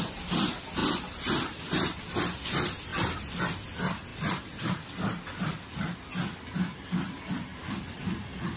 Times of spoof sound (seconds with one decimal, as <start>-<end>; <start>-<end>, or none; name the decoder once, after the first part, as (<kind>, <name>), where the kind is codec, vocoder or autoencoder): 2.9-3.4 (vocoder, BigVGAN v2); 4.1-4.8